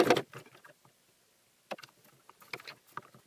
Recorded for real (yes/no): yes